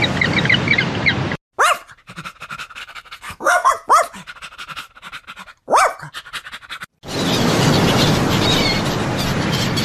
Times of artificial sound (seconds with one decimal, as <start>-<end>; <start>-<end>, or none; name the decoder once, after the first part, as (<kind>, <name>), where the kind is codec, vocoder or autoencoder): 2.8-3.7 (codec, SNAC)